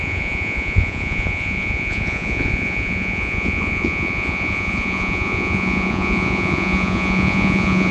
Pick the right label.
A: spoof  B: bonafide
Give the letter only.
A